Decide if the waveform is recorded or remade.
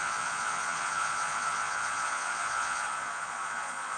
remade